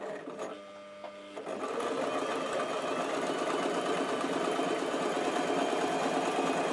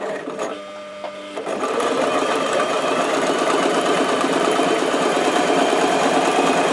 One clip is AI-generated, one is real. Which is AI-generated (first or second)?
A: second